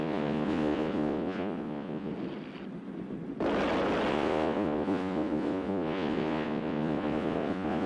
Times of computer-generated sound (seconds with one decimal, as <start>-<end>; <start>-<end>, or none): 0.0-2.1; 4.1-7.9